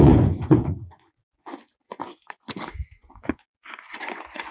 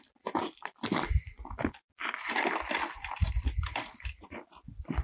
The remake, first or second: first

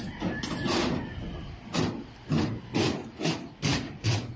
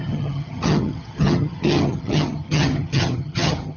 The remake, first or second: second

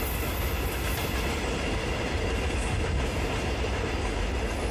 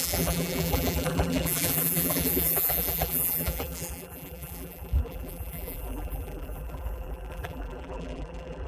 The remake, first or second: second